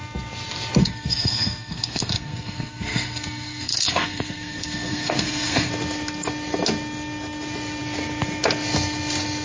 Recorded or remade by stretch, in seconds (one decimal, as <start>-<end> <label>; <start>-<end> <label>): 0.0-0.8 recorded; 0.8-5.7 remade; 5.7-9.4 recorded